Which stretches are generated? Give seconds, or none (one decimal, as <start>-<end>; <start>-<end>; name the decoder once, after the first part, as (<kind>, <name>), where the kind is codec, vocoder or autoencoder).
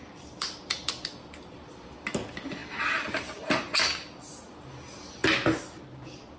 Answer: none